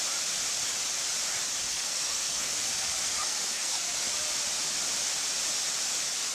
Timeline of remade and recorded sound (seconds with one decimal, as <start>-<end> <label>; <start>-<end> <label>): 0.0-1.7 recorded; 1.7-4.1 remade; 4.1-6.3 recorded